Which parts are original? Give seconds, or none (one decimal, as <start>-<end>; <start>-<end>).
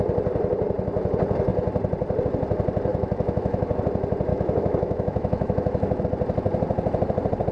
0.0-2.9; 3.8-4.3; 6.0-7.5